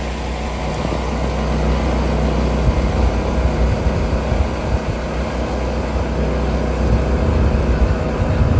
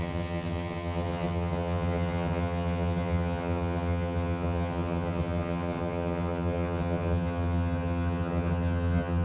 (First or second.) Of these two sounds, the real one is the first